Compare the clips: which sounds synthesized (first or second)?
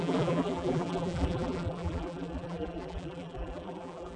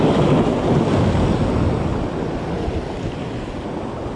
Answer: first